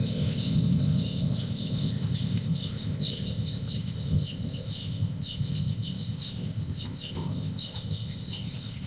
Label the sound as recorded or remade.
remade